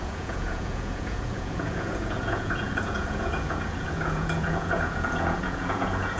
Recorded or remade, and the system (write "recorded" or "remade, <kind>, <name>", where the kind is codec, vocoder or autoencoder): remade, vocoder, Vocos